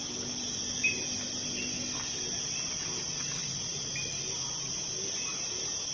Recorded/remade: recorded